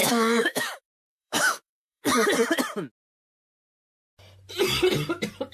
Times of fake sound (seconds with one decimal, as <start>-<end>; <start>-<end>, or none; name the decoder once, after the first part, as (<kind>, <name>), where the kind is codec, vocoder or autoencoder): 0.0-2.0 (autoencoder, DAC-VAE)